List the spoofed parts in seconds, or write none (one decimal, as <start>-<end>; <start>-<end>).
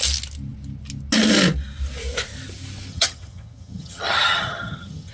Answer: 2.9-5.1